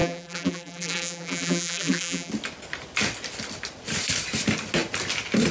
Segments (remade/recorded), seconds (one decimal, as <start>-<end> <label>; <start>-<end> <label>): 0.0-2.3 remade; 2.3-5.5 recorded